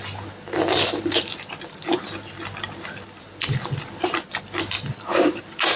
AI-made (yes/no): no